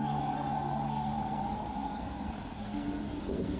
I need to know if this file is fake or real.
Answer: fake